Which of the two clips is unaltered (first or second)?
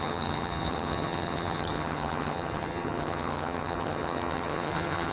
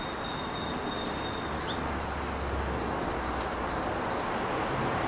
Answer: second